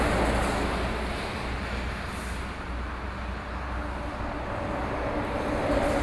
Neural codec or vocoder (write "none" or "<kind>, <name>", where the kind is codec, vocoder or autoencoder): none